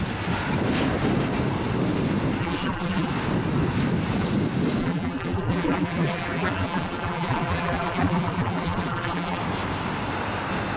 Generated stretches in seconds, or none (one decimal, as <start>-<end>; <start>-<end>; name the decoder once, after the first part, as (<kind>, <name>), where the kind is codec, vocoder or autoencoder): 2.4-3.1 (vocoder, BigVGAN v2); 4.8-9.4